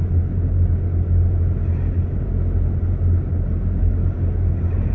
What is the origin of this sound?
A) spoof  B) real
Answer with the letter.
B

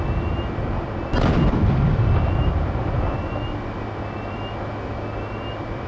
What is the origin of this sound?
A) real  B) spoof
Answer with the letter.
A